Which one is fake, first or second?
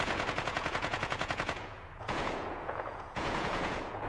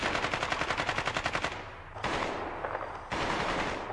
first